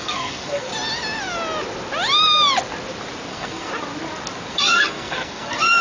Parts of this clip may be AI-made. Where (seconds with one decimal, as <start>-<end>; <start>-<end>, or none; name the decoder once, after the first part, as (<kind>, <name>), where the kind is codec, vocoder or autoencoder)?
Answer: 0.0-0.7 (codec, SNAC); 3.3-3.7; 4.5-5.8